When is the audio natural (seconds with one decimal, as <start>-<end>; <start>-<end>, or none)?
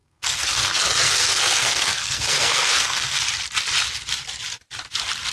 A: 3.2-5.3